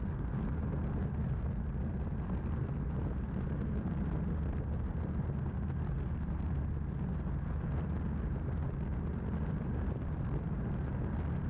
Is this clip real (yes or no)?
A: yes